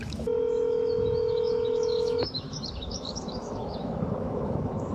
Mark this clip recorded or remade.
remade